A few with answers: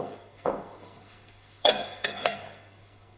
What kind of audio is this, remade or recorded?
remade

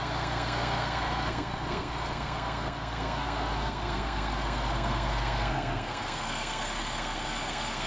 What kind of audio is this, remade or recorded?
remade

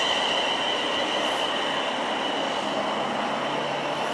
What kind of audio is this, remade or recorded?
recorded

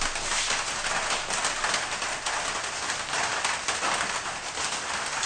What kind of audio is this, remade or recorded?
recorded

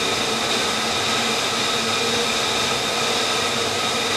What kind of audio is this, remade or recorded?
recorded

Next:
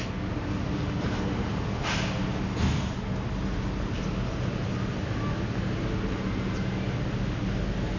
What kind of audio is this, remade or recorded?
recorded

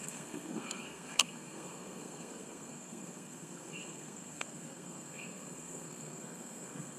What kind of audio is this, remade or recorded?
remade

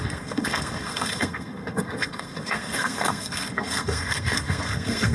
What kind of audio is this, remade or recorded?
remade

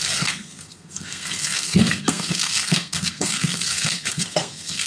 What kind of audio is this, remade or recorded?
remade